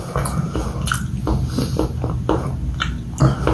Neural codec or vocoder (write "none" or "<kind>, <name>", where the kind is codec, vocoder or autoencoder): none